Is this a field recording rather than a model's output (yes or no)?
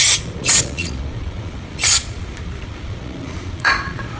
no